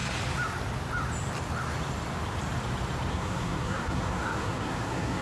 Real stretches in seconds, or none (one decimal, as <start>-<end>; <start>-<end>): 0.0-3.1